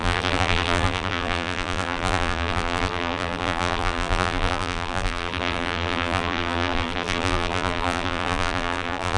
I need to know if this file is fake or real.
fake